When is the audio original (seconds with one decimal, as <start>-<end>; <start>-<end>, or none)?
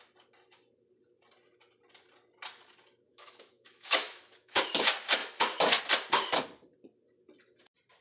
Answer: 0.0-3.1; 4.6-8.0